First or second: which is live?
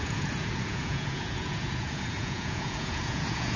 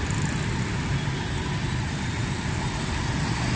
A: second